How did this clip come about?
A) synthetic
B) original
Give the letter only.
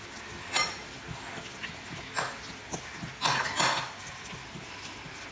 B